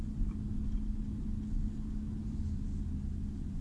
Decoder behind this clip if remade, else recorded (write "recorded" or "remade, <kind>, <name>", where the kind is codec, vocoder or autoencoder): recorded